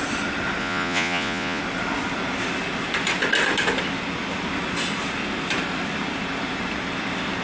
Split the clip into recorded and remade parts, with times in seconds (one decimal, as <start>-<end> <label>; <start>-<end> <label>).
0.0-0.6 recorded; 0.6-1.6 remade; 1.6-7.4 recorded